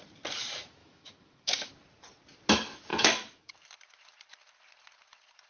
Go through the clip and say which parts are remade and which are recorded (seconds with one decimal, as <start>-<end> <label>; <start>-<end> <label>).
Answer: 0.0-0.8 recorded; 0.8-1.7 remade; 1.7-2.9 recorded; 2.9-3.5 remade; 3.5-5.5 recorded